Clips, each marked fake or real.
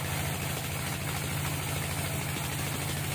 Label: real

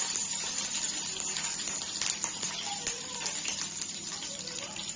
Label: fake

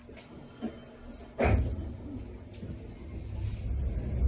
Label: real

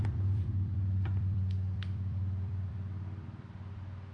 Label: fake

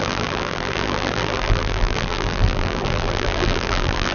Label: fake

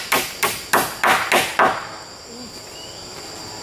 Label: real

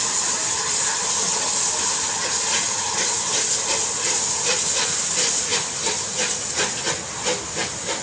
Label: real